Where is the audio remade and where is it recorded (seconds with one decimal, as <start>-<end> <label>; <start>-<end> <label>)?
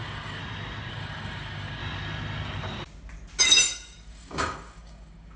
0.0-0.4 remade; 0.4-0.9 recorded; 0.9-1.8 remade; 1.8-3.4 recorded; 3.4-5.4 remade